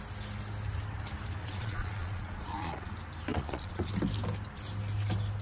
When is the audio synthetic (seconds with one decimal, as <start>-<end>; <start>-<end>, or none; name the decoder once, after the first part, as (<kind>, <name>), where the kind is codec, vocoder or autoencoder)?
1.4-2.9 (vocoder, Vocos); 3.3-3.9